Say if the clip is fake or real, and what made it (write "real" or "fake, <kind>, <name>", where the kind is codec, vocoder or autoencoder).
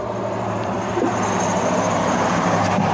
fake, vocoder, BigVGAN v2